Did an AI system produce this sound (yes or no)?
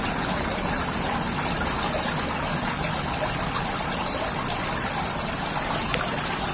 no